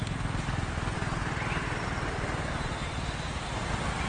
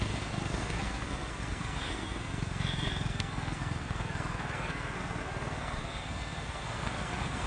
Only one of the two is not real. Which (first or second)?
second